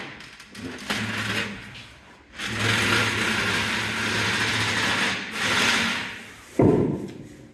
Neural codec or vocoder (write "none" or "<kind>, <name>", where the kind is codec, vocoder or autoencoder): none